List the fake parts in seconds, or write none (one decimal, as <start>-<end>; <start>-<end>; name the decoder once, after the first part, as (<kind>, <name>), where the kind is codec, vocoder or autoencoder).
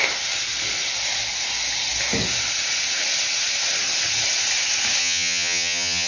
5.0-6.1 (vocoder, HiFi-GAN)